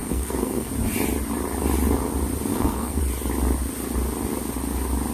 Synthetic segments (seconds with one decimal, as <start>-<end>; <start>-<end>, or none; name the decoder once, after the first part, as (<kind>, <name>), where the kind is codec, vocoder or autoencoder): 0.0-0.7 (codec, SNAC); 2.5-3.0

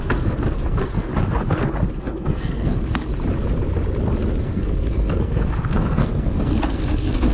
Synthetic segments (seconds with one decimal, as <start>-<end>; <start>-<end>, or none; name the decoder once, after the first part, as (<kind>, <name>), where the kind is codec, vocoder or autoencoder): 0.0-1.1 (codec, SNAC); 2.0-3.1; 4.4-7.3